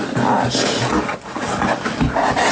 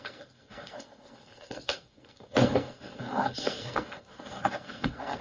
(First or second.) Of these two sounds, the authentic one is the first